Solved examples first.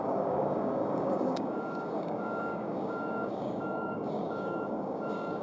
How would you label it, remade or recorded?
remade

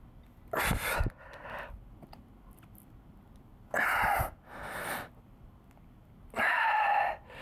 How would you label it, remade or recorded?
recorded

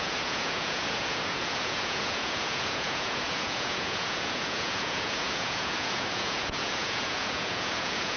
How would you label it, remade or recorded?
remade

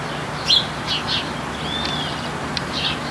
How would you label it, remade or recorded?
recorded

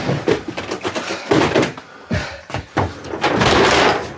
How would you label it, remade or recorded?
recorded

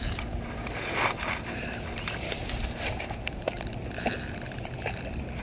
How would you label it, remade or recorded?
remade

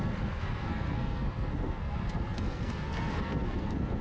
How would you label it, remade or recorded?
remade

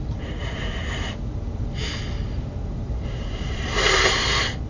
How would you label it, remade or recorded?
recorded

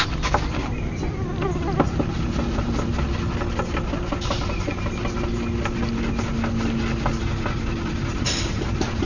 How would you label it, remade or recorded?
recorded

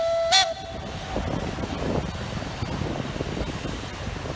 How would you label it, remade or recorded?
recorded